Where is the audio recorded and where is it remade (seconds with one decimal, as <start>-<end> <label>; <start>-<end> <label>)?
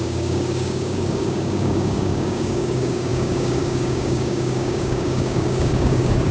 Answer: 0.0-6.3 remade